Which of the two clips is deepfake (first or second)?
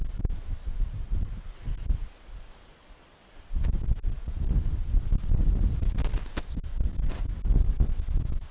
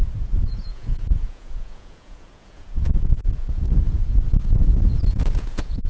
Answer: second